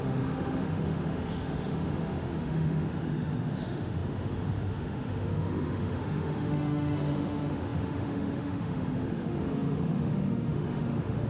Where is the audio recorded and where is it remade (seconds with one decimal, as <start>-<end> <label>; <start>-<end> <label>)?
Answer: 0.0-11.3 remade